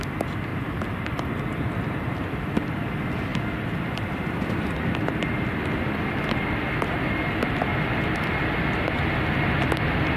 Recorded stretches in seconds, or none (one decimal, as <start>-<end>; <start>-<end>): 0.0-0.5; 1.3-10.2